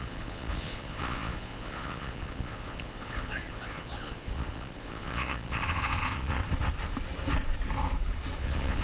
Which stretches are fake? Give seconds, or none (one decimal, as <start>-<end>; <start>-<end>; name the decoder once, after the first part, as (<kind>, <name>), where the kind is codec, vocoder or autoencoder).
0.0-6.4 (vocoder, Vocos); 8.4-8.8